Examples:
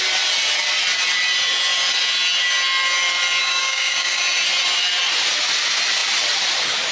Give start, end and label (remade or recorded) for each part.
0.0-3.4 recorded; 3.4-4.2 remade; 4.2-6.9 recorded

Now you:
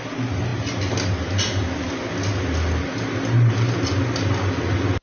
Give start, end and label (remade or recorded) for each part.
0.0-5.0 recorded

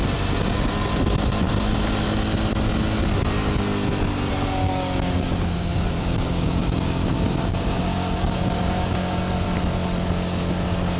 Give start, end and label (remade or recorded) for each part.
0.0-4.6 recorded; 4.6-9.2 remade; 9.2-11.0 recorded

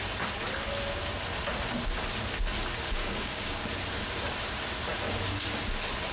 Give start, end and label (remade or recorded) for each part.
0.0-3.0 recorded; 3.0-3.7 remade; 3.7-6.1 recorded